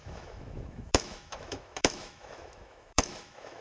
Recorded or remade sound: remade